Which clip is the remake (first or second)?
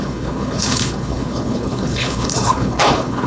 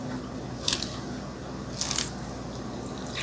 first